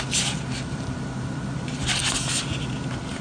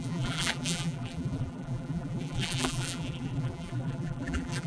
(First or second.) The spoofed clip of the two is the second